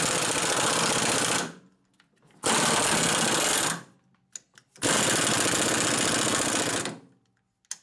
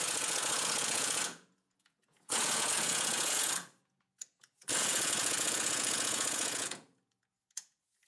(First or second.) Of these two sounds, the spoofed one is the second